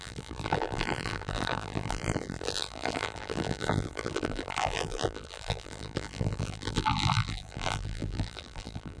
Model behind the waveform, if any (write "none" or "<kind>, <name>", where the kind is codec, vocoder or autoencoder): vocoder, BigVGAN v2